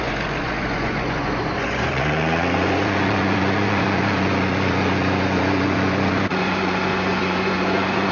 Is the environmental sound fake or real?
fake